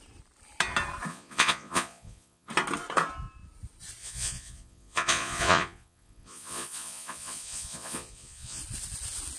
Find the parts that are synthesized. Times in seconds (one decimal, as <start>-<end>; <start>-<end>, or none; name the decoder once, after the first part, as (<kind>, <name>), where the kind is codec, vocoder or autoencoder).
1.1-2.5 (vocoder, Vocos); 4.0-8.6